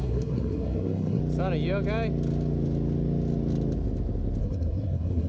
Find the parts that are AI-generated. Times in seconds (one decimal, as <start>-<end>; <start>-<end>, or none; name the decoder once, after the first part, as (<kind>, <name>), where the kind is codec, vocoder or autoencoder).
0.0-1.2 (codec, SNAC); 4.4-5.3